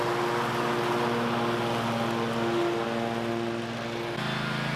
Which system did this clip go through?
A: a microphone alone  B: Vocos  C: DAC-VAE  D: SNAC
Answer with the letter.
A